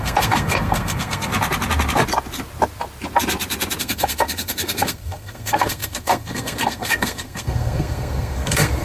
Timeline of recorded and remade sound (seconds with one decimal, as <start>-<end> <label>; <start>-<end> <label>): 0.0-1.3 remade; 1.3-3.8 recorded; 3.8-8.8 remade